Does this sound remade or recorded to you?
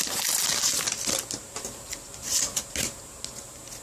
recorded